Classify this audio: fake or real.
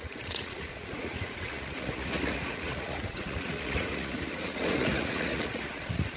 fake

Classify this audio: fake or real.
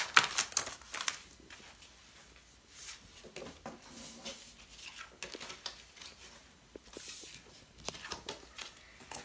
real